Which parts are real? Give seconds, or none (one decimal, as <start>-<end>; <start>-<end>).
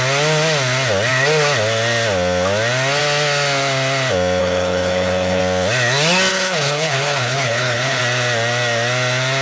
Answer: 0.0-4.4; 5.4-6.3; 8.0-9.4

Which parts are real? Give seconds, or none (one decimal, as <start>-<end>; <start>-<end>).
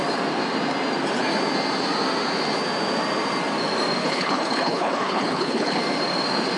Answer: 0.0-4.0; 5.8-6.6